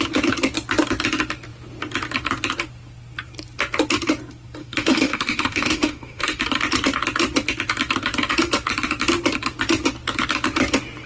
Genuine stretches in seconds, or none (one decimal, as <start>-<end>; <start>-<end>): 0.0-4.6; 6.4-11.1